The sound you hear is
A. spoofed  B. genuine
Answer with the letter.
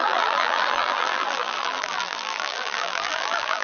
A